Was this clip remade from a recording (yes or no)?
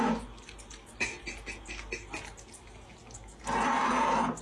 no